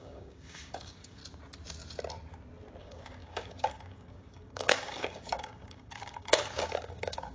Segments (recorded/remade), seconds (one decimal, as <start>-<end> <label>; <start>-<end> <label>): 0.0-1.2 remade; 1.2-2.8 recorded; 2.8-7.3 remade